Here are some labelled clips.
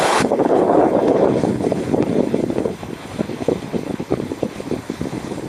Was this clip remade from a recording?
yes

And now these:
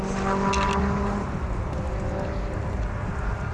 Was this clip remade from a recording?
no